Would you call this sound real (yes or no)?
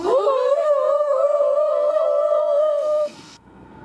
no